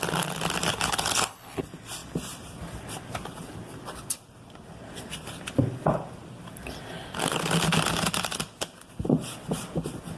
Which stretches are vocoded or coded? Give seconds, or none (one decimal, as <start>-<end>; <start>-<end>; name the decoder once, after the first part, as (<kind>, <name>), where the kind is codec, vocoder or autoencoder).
0.7-1.6 (codec, HILCodec)